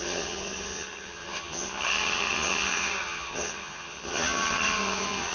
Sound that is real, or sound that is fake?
fake